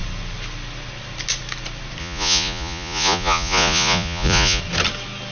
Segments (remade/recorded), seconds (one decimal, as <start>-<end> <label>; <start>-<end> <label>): 0.0-2.0 recorded; 2.0-4.6 remade; 4.6-5.3 recorded